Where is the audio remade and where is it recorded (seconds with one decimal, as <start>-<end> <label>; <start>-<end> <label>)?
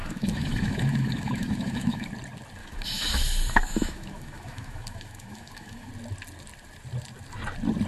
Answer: 0.0-2.1 remade; 2.1-2.6 recorded; 2.6-5.9 remade; 5.9-7.9 recorded